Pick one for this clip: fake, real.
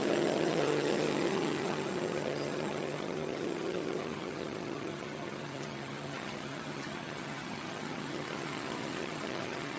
fake